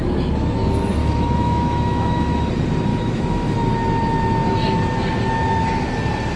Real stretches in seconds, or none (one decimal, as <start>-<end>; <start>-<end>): 0.0-1.0; 2.5-2.9; 3.5-6.4